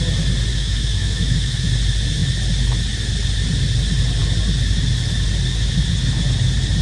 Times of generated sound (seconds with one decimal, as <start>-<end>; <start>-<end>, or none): 0.5-1.7